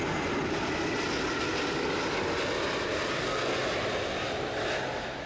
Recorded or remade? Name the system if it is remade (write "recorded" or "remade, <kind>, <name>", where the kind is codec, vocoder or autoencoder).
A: recorded